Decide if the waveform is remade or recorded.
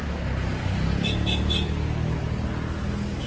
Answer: recorded